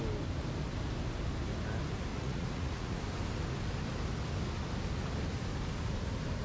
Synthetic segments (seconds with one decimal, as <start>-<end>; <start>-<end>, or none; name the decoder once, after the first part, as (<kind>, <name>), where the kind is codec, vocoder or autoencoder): 2.1-3.0 (vocoder, Vocos)